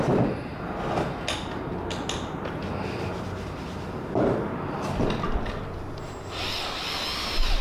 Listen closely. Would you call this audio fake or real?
real